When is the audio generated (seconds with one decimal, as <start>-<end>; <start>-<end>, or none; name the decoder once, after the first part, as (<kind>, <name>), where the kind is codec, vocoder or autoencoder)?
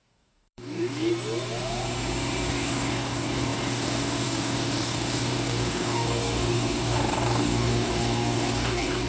0.0-1.1 (codec, DAC); 2.5-9.1